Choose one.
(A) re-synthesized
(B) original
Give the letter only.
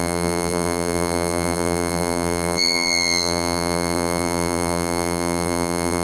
A